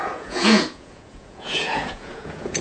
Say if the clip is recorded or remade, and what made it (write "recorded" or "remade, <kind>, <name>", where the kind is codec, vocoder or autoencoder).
remade, vocoder, Vocos